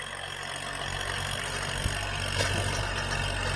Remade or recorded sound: recorded